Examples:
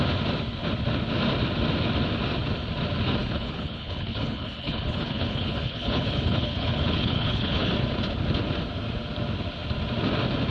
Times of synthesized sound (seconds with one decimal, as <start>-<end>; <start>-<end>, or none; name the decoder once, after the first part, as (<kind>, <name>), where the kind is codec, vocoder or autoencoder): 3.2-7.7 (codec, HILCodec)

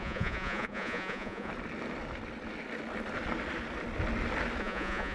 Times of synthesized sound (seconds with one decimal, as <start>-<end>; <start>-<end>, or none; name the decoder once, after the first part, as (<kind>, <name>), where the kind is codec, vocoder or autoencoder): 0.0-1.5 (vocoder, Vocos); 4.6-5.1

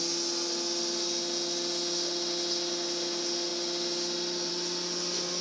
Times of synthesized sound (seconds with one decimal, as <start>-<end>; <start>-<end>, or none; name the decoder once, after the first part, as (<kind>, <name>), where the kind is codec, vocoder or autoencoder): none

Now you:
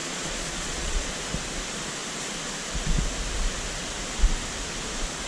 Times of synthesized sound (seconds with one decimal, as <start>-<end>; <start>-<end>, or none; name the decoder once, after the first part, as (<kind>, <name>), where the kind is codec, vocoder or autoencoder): 0.0-1.1 (vocoder, Vocos)